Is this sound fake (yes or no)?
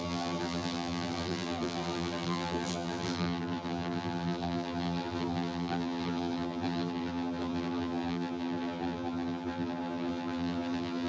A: yes